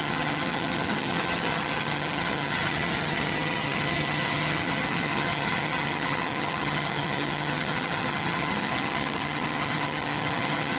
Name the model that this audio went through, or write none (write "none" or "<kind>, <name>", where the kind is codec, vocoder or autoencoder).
vocoder, HiFi-GAN